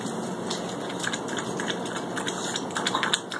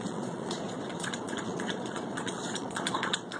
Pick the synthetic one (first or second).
second